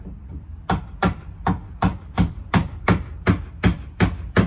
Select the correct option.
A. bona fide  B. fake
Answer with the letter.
B